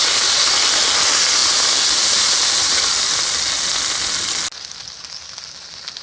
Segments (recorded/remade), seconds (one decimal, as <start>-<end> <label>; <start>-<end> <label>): 0.0-6.0 recorded